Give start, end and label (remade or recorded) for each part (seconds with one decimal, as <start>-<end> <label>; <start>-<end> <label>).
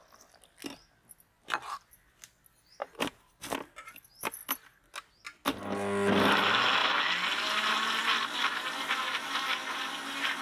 0.0-10.4 recorded